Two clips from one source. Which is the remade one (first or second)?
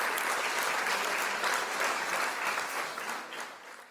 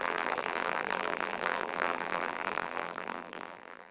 second